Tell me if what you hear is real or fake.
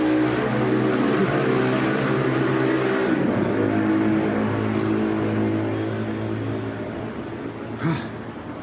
real